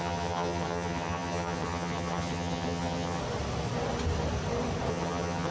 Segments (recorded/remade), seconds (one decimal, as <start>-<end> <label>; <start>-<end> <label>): 0.0-3.2 remade; 3.2-4.9 recorded; 4.9-5.5 remade